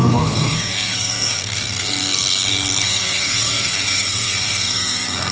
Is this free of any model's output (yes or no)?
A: no